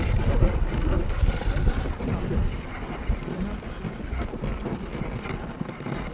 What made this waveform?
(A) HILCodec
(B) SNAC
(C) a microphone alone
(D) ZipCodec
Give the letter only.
C